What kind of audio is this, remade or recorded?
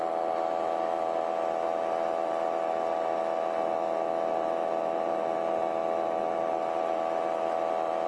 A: recorded